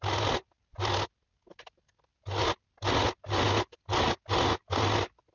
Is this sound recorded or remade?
recorded